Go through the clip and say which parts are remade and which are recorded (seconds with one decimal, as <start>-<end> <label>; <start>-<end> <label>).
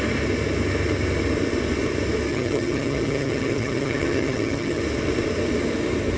0.0-2.3 recorded; 2.3-4.8 remade; 4.8-6.2 recorded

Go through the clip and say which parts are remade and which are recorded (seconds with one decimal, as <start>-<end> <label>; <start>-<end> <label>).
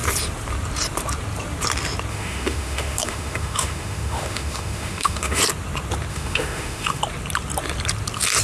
0.0-2.1 recorded; 2.1-5.4 remade; 5.4-6.1 recorded; 6.1-7.0 remade; 7.0-8.4 recorded